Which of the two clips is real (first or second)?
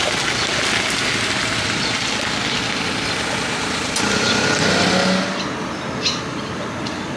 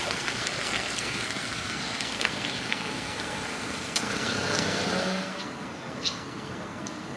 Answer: first